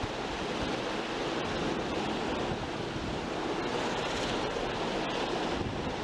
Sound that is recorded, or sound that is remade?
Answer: recorded